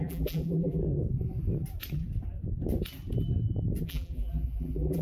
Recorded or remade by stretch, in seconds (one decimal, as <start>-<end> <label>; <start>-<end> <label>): 0.0-0.8 remade; 0.8-3.8 recorded; 3.8-5.0 remade